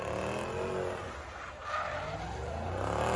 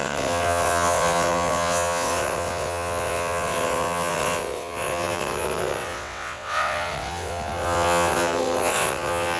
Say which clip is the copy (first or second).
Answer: second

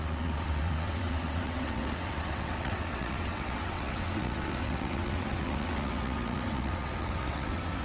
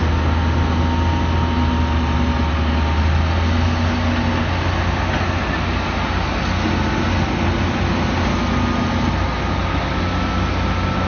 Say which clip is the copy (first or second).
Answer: first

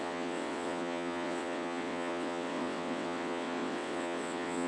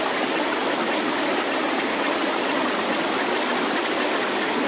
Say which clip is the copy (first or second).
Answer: first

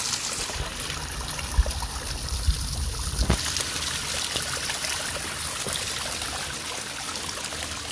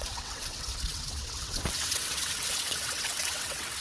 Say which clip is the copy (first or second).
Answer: second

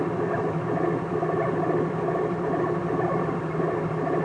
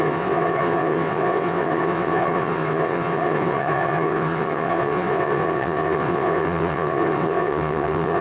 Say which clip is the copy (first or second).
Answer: second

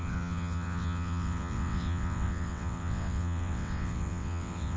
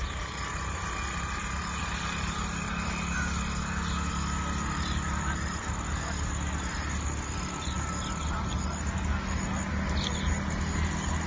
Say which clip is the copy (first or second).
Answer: first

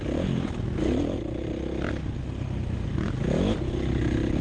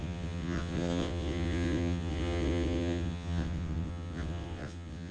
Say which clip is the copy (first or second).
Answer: second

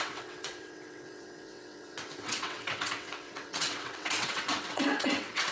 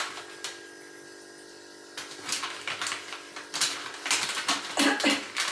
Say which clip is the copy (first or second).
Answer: first